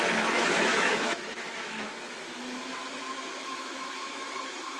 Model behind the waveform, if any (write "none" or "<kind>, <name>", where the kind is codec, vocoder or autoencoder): autoencoder, DAC-VAE